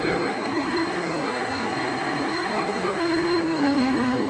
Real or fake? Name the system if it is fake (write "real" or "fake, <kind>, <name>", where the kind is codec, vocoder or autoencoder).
fake, codec, SNAC